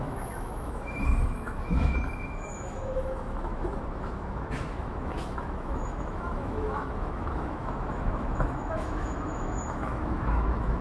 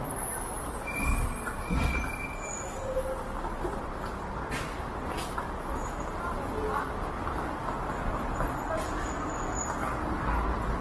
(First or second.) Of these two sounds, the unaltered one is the second